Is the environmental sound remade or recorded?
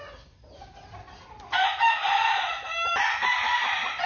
recorded